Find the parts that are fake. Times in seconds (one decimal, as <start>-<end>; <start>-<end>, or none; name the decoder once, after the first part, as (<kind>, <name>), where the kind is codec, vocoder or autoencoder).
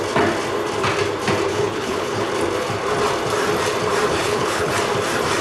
1.5-2.3 (codec, HILCodec); 4.2-4.7